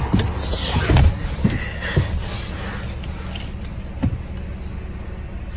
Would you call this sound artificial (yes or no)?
no